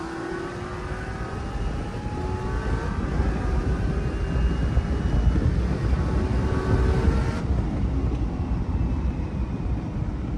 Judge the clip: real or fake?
real